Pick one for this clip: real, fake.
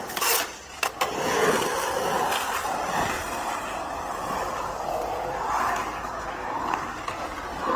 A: real